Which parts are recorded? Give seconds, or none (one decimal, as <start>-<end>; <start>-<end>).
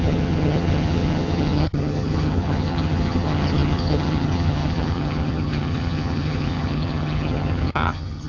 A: none